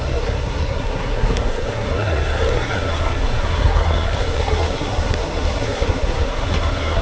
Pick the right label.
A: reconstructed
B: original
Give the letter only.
A